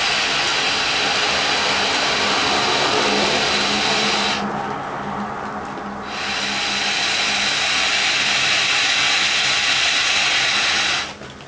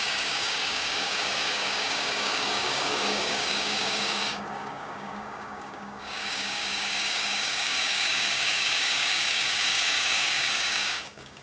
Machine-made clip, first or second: second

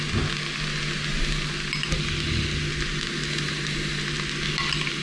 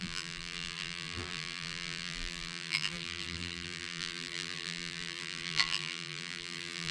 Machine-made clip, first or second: second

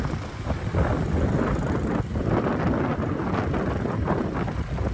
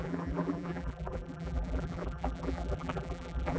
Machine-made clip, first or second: second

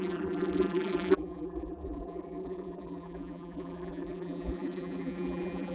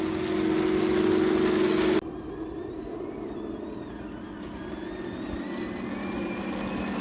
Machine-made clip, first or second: first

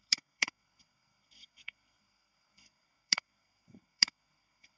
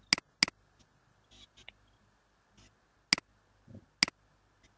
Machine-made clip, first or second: first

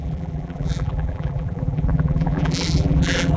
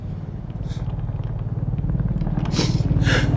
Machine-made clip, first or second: first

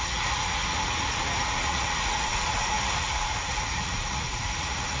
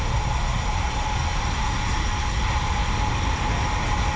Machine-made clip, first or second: first